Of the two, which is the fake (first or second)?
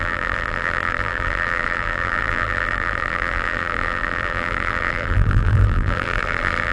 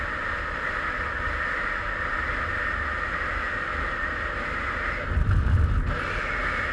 first